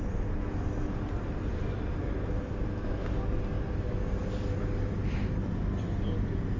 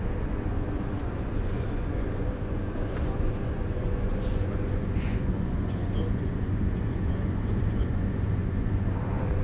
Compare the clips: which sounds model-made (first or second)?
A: second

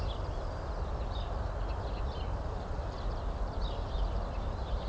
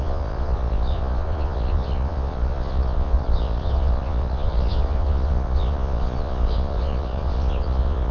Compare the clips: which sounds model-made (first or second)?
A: second